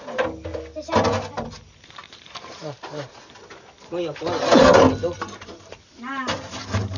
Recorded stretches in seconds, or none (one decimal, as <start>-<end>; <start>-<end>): 0.0-2.0; 3.1-5.0